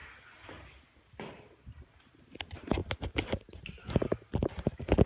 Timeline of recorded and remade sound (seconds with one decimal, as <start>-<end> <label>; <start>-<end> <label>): 0.0-5.1 recorded